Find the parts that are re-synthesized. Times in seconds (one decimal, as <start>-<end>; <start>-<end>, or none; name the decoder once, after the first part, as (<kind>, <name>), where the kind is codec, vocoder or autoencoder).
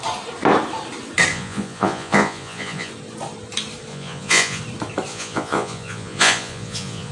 1.3-2.9 (vocoder, Vocos); 3.9-4.6; 5.1-7.1